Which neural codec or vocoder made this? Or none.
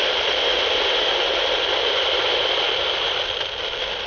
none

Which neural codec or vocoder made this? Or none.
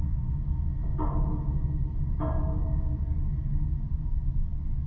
none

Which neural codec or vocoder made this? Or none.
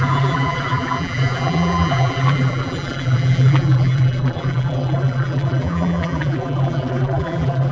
vocoder, BigVGAN v2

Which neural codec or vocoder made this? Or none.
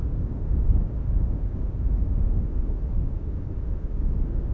autoencoder, DAC-VAE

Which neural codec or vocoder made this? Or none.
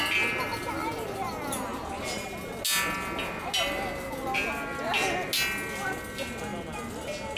none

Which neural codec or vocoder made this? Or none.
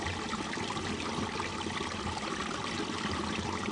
none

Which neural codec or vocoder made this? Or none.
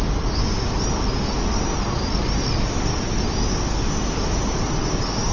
none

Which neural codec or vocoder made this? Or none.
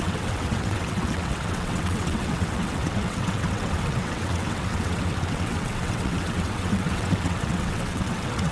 vocoder, WaveNeXt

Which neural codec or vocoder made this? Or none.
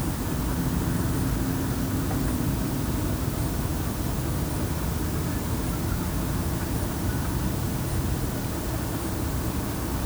none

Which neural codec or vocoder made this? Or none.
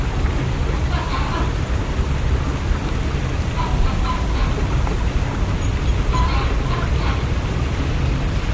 none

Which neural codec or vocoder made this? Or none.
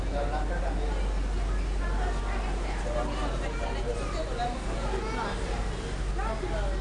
none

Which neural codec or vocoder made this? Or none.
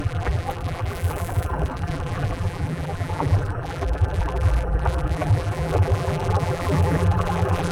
vocoder, BigVGAN v2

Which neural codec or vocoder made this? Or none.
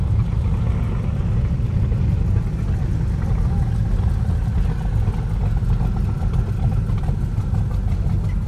none